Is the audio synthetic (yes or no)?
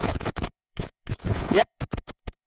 yes